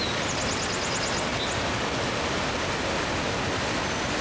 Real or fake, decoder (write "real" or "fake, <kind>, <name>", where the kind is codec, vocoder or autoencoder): real